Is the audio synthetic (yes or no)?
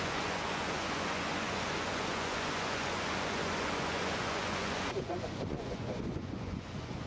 yes